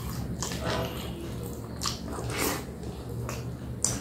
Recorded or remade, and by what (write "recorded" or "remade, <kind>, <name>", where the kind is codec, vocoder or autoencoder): recorded